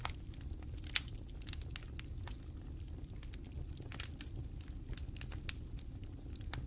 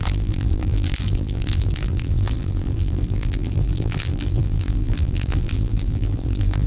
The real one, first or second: first